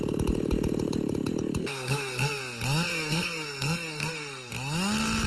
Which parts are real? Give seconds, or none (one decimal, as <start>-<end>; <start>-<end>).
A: 0.0-1.6; 2.4-2.9; 4.5-5.3